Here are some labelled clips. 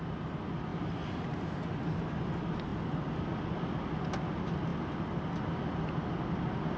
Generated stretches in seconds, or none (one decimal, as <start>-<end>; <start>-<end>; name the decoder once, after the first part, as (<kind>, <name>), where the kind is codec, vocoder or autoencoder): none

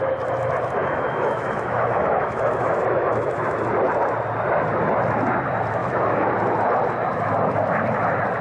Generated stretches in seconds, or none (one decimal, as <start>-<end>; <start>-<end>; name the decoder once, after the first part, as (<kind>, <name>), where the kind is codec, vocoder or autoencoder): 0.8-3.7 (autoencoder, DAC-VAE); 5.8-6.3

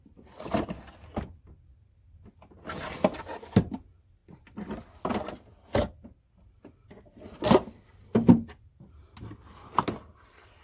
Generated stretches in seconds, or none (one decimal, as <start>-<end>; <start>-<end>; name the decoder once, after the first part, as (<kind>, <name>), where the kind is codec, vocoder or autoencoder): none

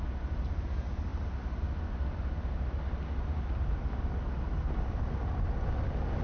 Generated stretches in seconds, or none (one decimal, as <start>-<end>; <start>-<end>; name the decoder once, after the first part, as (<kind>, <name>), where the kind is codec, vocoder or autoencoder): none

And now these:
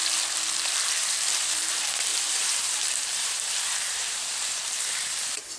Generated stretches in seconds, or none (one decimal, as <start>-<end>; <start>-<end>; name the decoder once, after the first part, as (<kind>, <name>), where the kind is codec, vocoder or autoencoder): 2.1-5.6 (vocoder, BigVGAN v2)

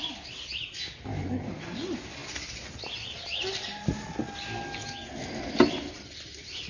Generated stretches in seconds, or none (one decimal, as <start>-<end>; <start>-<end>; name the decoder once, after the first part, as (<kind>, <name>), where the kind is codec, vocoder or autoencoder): none